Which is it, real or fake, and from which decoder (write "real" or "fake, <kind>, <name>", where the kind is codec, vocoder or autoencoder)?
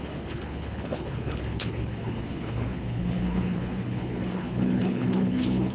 fake, codec, HILCodec